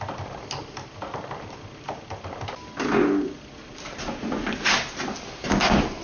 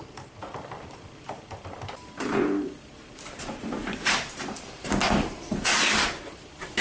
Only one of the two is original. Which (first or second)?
first